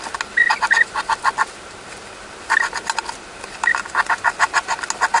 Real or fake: real